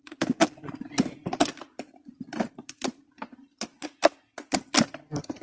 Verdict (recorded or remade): remade